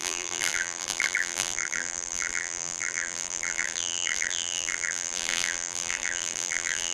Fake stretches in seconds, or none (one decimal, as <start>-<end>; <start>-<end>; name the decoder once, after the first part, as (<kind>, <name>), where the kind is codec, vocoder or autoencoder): 0.0-6.9 (vocoder, BigVGAN v2)

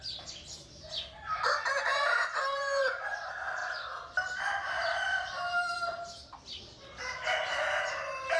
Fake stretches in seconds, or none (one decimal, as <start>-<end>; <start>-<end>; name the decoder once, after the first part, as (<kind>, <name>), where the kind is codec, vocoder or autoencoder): 3.6-7.6 (vocoder, BigVGAN v2)

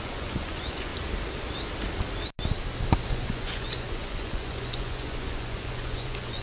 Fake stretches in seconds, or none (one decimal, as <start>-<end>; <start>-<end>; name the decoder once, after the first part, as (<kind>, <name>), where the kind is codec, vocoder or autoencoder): 0.0-0.9 (vocoder, Vocos); 3.1-6.4

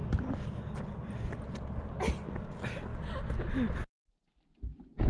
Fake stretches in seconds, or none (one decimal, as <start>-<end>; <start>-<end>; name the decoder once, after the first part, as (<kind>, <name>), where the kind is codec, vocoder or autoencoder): none

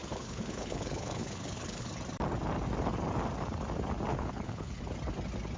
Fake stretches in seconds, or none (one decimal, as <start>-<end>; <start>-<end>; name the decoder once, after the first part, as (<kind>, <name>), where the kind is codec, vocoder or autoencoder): 0.0-1.9 (codec, HILCodec); 4.1-4.8

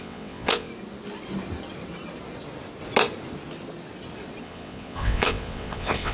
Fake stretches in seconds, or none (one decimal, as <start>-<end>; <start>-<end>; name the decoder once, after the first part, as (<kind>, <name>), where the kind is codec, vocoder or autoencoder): 0.0-0.7 (vocoder, WaveNeXt); 4.4-6.1

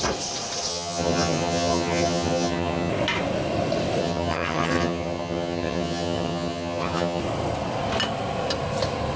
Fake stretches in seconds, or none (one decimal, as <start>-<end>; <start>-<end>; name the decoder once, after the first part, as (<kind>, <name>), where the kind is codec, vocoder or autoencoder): 0.7-2.9 (vocoder, HiFi-GAN); 4.0-7.2